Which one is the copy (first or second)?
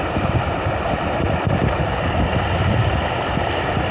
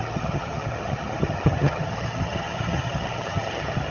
second